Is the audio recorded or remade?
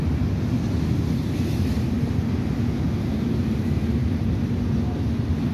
recorded